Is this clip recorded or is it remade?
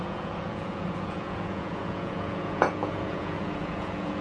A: remade